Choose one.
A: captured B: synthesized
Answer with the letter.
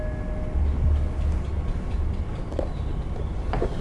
A